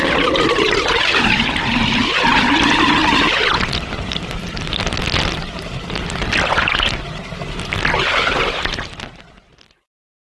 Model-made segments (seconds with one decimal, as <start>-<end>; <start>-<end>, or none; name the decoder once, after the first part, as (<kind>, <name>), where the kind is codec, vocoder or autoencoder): none